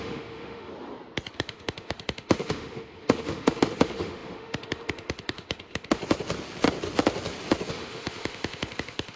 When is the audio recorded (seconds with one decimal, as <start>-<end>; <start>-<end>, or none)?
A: 0.7-1.3; 6.0-7.7